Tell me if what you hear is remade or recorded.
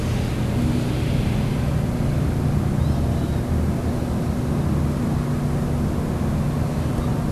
recorded